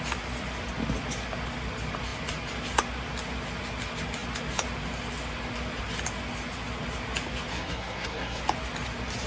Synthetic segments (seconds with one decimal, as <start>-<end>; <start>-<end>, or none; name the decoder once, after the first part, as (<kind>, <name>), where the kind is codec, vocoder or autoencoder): 7.5-8.4 (codec, SNAC)